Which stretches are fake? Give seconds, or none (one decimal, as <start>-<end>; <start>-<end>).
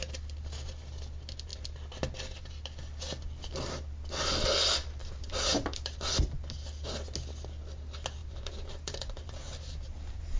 5.0-5.8; 8.2-10.4